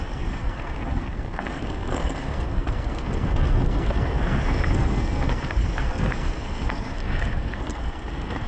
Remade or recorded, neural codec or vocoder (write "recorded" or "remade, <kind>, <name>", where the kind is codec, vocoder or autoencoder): remade, codec, SNAC